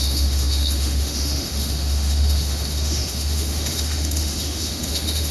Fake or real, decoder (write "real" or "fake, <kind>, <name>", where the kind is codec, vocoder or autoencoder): fake, autoencoder, DAC-VAE